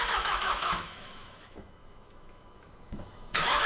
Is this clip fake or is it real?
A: fake